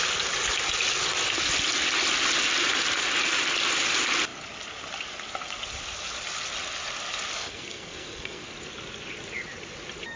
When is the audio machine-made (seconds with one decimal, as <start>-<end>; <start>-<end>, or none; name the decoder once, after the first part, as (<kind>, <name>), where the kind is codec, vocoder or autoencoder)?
7.3-8.5 (codec, SNAC)